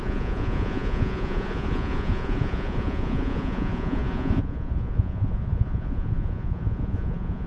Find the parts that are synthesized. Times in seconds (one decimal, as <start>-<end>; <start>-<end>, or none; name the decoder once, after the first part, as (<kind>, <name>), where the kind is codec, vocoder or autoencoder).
0.0-7.5 (vocoder, Vocos)